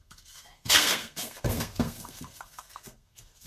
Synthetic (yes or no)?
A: yes